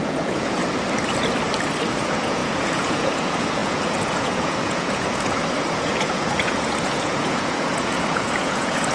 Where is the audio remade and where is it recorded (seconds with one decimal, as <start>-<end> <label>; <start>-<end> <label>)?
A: 0.0-0.6 remade; 0.6-1.9 recorded; 1.9-8.9 remade